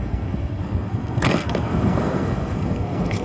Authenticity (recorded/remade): remade